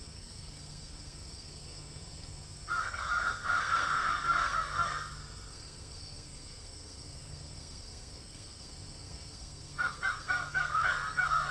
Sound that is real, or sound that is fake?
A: fake